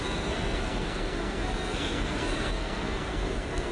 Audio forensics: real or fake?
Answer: fake